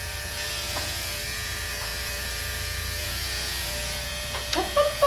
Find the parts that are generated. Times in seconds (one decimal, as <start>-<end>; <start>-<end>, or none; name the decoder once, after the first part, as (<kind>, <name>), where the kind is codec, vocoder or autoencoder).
0.0-5.1 (vocoder, Vocos)